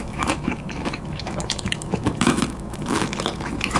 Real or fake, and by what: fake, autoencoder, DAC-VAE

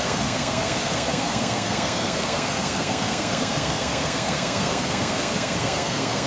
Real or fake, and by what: fake, codec, SNAC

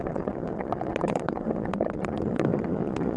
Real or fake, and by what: fake, vocoder, Vocos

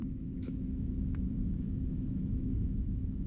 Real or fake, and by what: fake, autoencoder, DAC-VAE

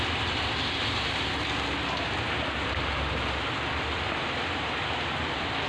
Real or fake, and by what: real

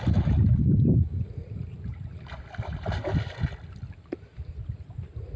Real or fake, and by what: real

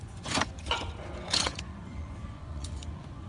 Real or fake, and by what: fake, vocoder, Vocos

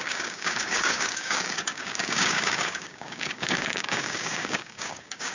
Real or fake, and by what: fake, codec, DAC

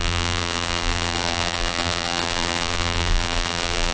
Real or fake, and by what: fake, vocoder, BigVGAN v2